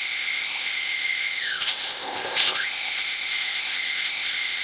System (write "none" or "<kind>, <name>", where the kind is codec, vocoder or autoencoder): codec, ZipCodec